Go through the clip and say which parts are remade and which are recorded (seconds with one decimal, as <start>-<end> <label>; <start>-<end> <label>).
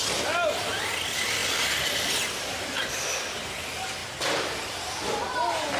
0.0-5.8 recorded